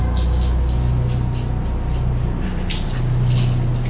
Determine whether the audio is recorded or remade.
recorded